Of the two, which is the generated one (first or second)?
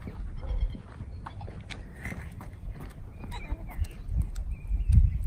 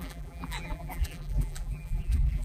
second